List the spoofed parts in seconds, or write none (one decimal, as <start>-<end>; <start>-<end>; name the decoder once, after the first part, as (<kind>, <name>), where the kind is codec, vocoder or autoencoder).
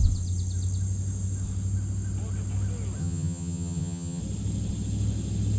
3.0-4.2 (vocoder, HiFi-GAN)